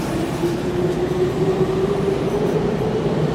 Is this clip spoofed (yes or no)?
no